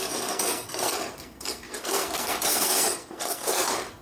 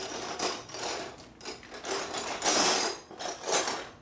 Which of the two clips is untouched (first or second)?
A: second